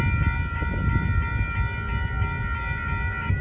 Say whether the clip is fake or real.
real